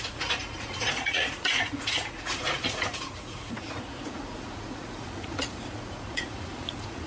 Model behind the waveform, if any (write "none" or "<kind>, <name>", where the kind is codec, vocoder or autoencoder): vocoder, Vocos